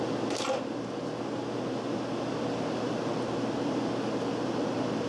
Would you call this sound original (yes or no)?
yes